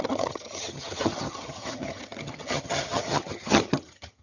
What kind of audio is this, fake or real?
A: fake